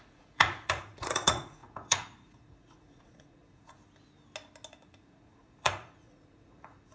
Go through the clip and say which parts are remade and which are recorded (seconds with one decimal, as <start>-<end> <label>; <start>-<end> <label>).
0.0-3.8 remade; 3.8-4.7 recorded; 4.7-6.9 remade